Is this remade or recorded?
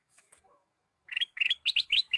remade